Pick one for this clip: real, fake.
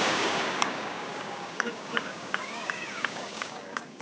fake